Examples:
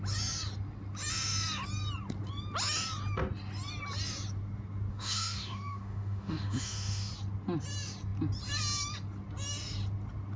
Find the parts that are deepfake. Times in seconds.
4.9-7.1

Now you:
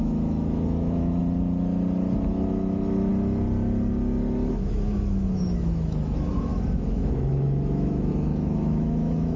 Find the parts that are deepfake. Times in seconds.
0.0-1.2; 2.3-3.1; 4.5-9.4

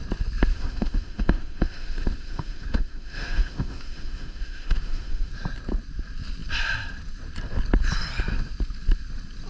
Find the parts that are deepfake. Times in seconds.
0.5-5.3